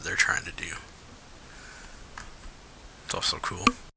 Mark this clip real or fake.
real